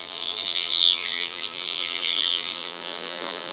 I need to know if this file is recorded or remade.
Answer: remade